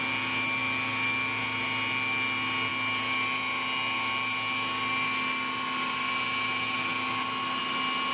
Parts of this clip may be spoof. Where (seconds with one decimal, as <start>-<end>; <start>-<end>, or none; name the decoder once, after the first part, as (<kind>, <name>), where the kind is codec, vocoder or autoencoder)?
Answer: none